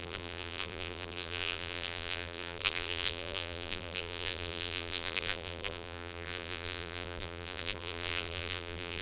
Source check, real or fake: fake